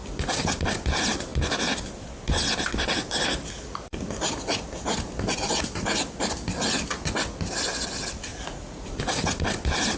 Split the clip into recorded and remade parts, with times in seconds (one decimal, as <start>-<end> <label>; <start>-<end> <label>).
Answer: 0.0-8.3 recorded; 8.3-9.0 remade; 9.0-10.0 recorded